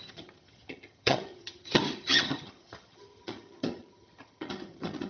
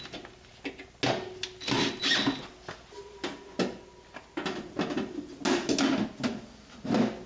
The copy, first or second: first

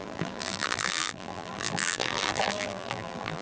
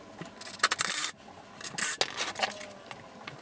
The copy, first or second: first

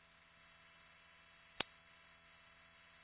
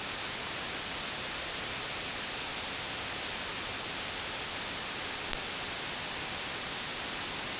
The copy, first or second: first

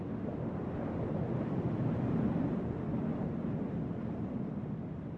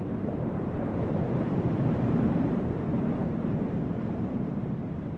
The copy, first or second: second